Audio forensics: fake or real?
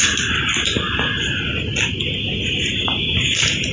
real